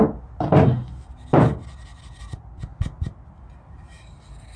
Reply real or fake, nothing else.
real